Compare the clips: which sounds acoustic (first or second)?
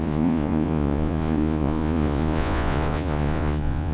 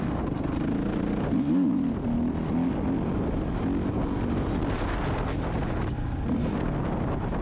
second